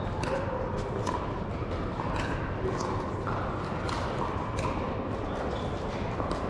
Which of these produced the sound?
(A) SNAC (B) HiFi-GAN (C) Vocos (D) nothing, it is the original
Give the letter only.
D